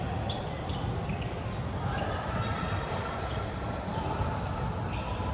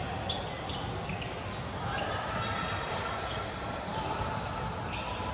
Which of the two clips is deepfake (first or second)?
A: first